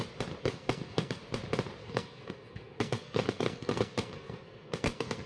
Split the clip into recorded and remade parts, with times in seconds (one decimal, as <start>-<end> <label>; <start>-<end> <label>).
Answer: 0.0-0.4 recorded; 0.4-1.2 remade; 1.2-1.8 recorded; 1.8-5.3 remade